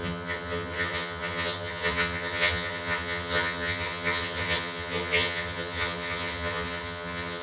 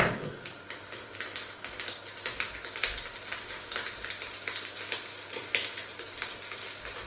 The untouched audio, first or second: second